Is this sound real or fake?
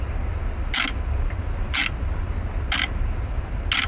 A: real